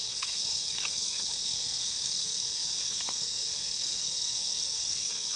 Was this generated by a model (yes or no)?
yes